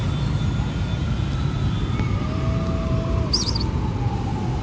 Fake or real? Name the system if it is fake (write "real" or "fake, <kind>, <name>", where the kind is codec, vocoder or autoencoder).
real